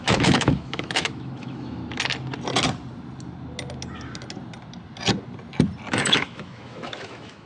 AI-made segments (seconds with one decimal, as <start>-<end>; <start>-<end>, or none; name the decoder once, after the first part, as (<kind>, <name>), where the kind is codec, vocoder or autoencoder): 0.0-1.8 (autoencoder, DAC-VAE); 5.9-7.5